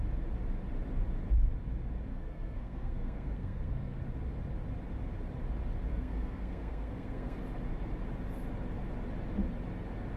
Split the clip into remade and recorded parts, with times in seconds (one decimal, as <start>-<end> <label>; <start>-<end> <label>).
0.0-2.1 recorded; 2.1-4.0 remade; 4.0-5.9 recorded; 5.9-7.4 remade; 7.4-10.2 recorded